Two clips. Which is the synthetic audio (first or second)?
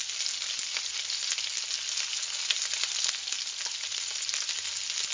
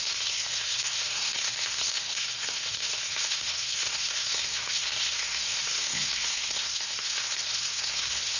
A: second